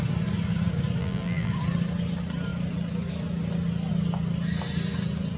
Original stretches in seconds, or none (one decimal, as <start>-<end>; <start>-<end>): 0.0-1.0; 1.5-5.4